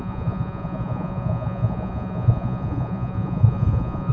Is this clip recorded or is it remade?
remade